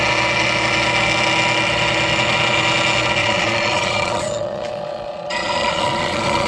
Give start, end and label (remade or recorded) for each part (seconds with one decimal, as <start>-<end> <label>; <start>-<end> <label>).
0.0-3.2 recorded; 3.2-6.5 remade